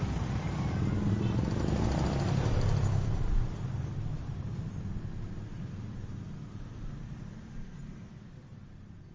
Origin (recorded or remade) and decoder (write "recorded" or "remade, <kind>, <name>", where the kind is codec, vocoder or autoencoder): recorded